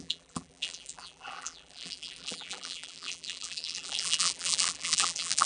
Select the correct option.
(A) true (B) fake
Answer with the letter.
B